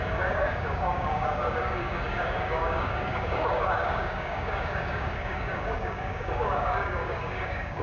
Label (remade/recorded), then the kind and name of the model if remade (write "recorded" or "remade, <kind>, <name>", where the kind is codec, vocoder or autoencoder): remade, codec, DAC